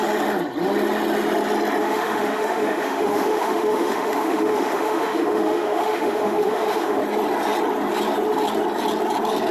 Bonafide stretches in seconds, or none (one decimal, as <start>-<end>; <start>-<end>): 0.0-1.8; 7.0-9.5